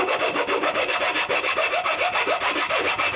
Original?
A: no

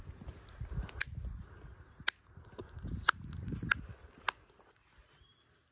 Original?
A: yes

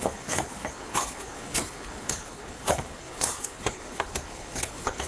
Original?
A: no